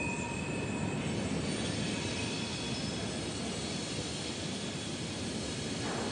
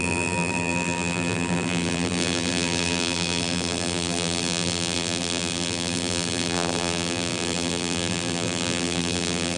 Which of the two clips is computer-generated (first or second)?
second